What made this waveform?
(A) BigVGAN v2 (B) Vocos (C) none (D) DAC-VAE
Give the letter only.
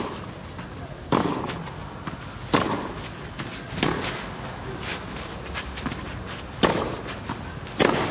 C